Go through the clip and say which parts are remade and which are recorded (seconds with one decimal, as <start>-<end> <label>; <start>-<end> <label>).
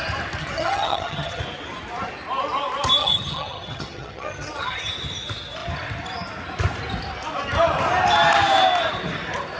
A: 0.0-0.4 recorded; 0.4-1.4 remade; 1.4-3.0 recorded; 3.0-4.9 remade; 4.9-9.6 recorded